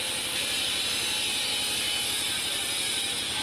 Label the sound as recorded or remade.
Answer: recorded